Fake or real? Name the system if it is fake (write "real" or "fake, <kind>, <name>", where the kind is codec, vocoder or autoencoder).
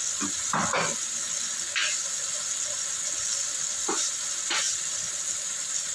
real